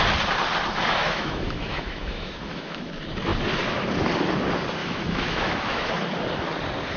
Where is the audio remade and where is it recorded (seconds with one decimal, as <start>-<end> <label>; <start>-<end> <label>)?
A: 0.0-1.0 recorded; 1.0-2.9 remade; 2.9-4.8 recorded; 4.8-5.9 remade; 5.9-7.0 recorded